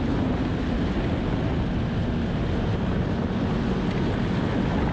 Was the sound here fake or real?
real